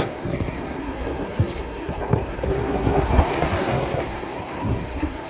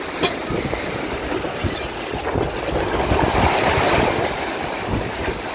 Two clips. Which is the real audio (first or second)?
second